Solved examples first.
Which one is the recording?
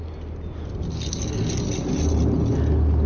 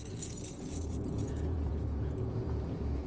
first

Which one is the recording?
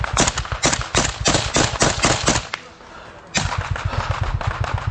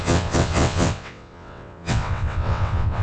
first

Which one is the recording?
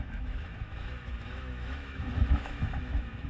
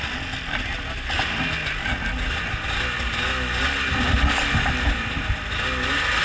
second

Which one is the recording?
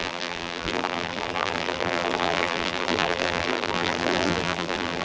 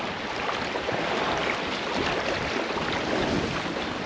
second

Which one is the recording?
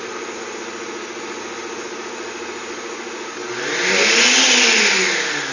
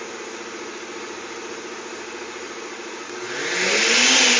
first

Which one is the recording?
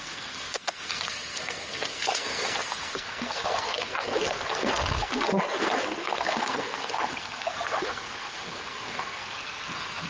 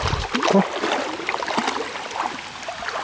second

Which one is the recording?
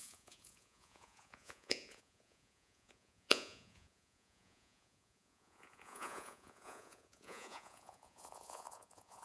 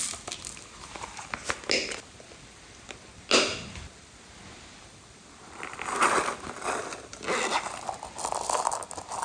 second